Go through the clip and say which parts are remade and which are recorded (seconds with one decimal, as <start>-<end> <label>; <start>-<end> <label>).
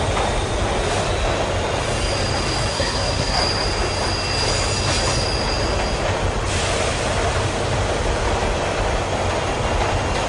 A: 0.0-2.7 recorded; 2.7-3.4 remade; 3.4-10.3 recorded